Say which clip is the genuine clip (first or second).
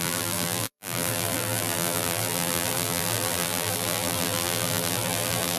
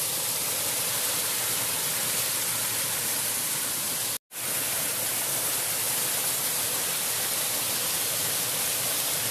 second